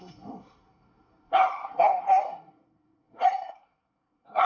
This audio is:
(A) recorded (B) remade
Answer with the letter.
B